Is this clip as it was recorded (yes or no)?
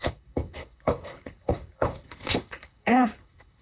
no